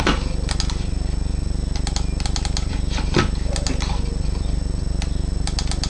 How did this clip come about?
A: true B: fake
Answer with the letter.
A